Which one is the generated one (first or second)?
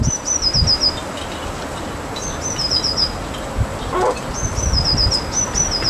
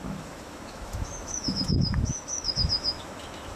second